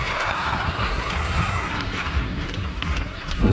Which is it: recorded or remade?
remade